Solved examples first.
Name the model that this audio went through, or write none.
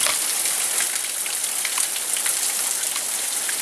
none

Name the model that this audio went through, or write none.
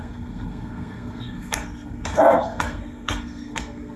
codec, SNAC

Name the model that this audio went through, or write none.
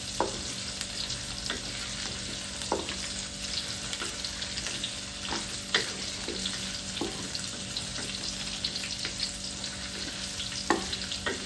none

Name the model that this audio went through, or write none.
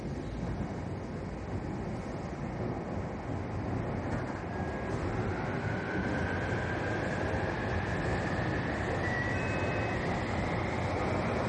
none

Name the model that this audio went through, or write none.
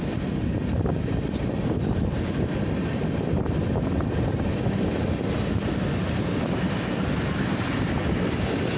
none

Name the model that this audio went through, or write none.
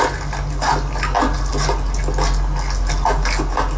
none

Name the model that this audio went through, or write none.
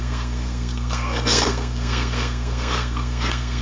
codec, SNAC